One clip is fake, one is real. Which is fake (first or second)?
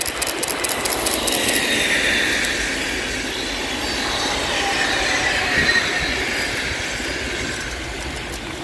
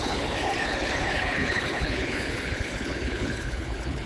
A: second